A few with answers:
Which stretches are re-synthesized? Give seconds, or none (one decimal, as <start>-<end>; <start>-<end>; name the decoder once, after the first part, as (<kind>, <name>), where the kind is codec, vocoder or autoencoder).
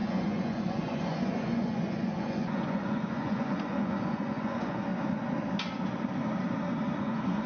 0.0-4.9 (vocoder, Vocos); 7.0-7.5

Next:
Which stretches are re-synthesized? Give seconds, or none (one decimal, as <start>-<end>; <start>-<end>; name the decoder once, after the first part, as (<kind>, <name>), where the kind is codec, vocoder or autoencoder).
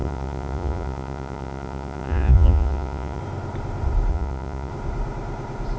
0.0-3.2 (vocoder, Vocos); 4.1-4.7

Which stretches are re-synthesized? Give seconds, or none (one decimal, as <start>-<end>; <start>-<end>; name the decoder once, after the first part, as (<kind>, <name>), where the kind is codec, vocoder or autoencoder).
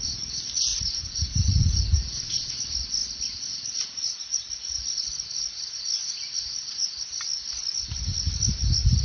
0.7-2.5 (vocoder, Vocos)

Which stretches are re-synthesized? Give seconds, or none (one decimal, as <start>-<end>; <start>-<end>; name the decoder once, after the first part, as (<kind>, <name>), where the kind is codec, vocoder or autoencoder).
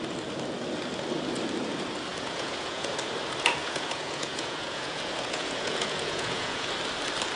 2.1-2.9 (vocoder, Vocos); 3.6-6.7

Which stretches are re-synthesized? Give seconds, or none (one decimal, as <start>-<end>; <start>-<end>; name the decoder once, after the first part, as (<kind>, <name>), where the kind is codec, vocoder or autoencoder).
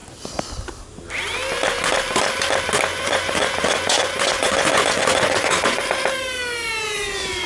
2.9-5.8 (vocoder, Vocos)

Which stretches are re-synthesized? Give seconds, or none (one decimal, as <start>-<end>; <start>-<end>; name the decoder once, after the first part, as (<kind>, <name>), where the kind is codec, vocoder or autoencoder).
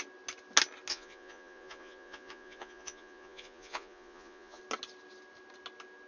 0.9-4.6 (vocoder, Vocos)